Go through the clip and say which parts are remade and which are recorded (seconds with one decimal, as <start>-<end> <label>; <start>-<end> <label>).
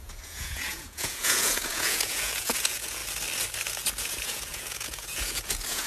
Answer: 0.0-3.0 remade; 3.0-4.0 recorded; 4.0-5.9 remade